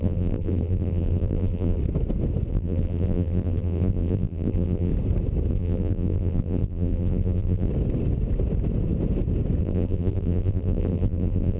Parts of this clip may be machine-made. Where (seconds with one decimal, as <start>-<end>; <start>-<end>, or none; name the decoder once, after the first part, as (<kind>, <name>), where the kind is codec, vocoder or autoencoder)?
0.0-1.8 (vocoder, BigVGAN v2); 2.5-4.9; 5.5-7.7; 9.6-11.6